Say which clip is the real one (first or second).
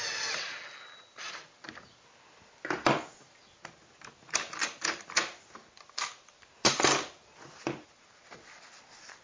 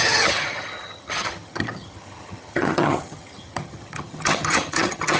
first